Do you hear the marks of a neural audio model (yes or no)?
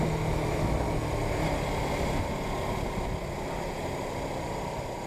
no